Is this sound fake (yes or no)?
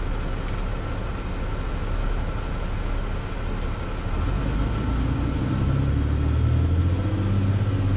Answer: no